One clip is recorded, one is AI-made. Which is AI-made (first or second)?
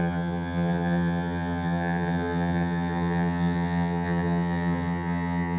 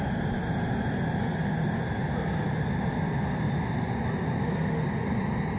first